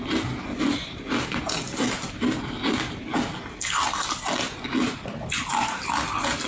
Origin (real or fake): real